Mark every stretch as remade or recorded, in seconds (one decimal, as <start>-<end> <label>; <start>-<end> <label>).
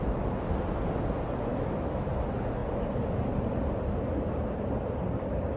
0.0-1.5 recorded; 1.5-2.1 remade; 2.1-5.6 recorded